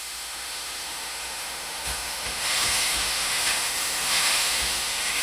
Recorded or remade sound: remade